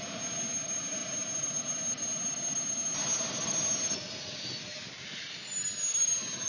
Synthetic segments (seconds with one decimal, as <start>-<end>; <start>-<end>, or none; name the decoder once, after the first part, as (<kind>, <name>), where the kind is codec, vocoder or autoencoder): none